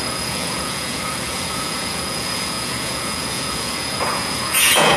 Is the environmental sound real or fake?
fake